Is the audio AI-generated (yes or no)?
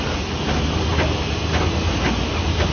no